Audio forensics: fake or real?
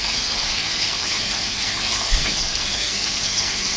fake